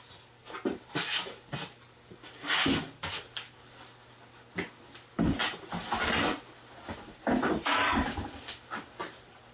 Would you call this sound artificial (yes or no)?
no